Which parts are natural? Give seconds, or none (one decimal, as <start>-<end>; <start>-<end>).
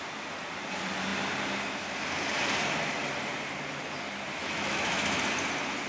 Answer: 0.0-4.4; 5.2-5.9